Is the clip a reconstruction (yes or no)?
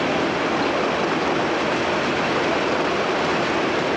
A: no